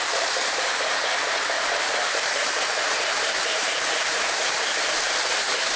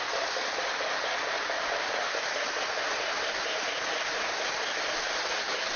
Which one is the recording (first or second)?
second